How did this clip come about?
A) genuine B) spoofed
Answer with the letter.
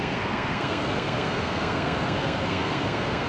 B